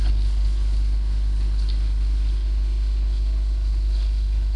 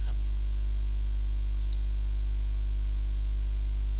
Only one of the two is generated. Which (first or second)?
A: first